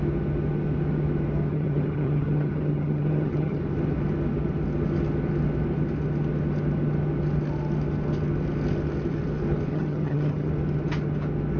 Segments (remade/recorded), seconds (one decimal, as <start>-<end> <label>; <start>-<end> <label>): 0.0-1.5 recorded; 1.5-3.6 remade; 3.6-9.7 recorded; 9.7-10.5 remade; 10.5-11.6 recorded